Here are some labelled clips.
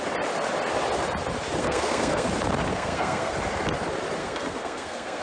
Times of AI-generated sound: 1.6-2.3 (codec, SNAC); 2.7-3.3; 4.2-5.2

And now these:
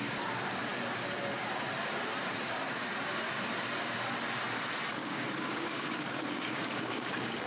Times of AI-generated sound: 5.0-7.5 (codec, DAC)

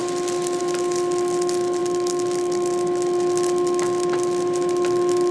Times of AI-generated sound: none

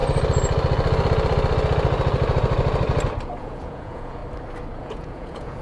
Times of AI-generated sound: 3.4-4.2 (vocoder, Vocos); 4.8-5.6

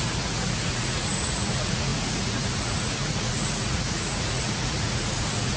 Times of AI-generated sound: 0.0-5.6 (vocoder, Vocos)

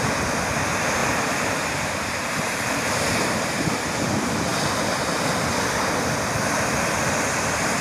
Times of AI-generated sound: 1.0-3.7 (vocoder, BigVGAN v2)

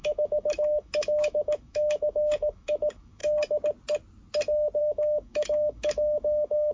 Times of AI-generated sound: 0.0-3.2 (autoencoder, DAC-VAE); 4.8-6.7